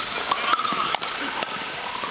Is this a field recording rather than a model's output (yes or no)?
yes